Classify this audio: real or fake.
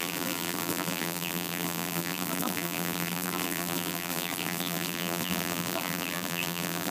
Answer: fake